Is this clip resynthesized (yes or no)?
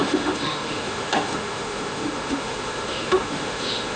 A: yes